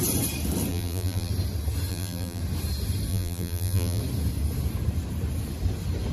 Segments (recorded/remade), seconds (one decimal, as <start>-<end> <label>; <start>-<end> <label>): 0.0-0.7 recorded; 0.7-1.3 remade; 1.3-1.9 recorded; 1.9-2.4 remade; 2.4-3.1 recorded; 3.1-4.0 remade; 4.0-6.1 recorded